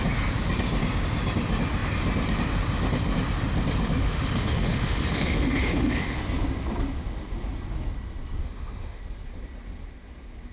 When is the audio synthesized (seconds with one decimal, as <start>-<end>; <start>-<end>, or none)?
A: 4.0-6.2; 8.4-9.0